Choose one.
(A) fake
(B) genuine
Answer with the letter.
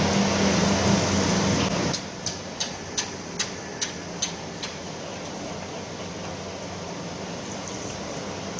B